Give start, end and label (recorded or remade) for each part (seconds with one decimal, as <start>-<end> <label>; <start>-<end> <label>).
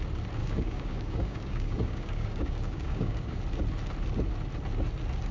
0.0-0.4 recorded; 0.4-3.4 remade; 3.4-5.3 recorded